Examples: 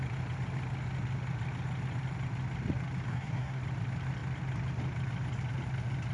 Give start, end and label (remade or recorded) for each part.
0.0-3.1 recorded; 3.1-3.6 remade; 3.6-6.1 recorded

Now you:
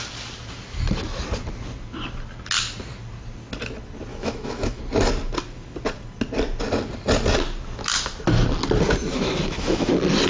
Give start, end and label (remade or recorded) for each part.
0.0-4.1 recorded; 4.1-4.8 remade; 4.8-9.1 recorded; 9.1-9.9 remade; 9.9-10.3 recorded

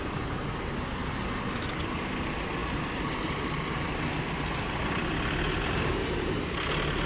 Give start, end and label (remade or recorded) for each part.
0.0-7.1 recorded

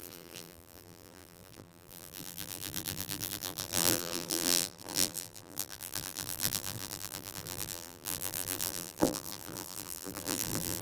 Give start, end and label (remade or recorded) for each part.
0.0-10.8 remade

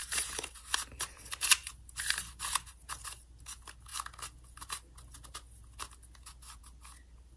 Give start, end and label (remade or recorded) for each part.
0.0-1.7 remade; 1.7-2.3 recorded; 2.3-2.9 remade; 2.9-7.4 recorded